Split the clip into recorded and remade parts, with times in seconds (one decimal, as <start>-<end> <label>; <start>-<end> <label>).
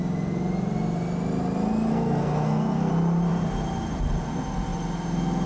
0.0-1.9 recorded; 1.9-2.9 remade; 2.9-5.5 recorded